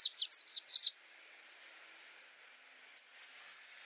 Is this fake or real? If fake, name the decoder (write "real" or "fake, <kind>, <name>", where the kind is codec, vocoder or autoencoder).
real